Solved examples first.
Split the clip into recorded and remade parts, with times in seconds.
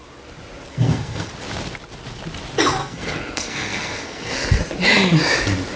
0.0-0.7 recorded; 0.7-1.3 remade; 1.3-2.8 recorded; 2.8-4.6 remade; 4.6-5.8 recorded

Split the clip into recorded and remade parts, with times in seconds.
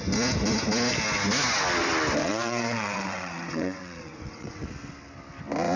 0.0-2.2 recorded; 2.2-4.7 remade; 4.7-5.8 recorded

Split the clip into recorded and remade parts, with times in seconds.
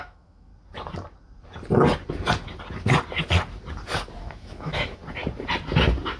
0.0-0.5 remade; 0.5-4.2 recorded; 4.2-5.0 remade; 5.0-6.2 recorded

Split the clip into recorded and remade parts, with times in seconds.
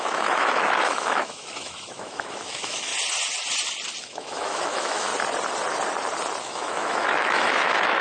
0.0-2.9 remade; 2.9-4.0 recorded; 4.0-5.1 remade; 5.1-6.4 recorded; 6.4-8.0 remade